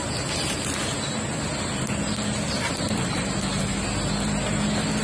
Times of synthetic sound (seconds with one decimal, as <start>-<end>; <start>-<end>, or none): none